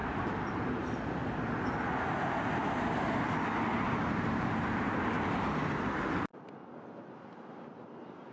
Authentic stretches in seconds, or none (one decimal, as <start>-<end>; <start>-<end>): 0.6-3.7; 5.6-8.3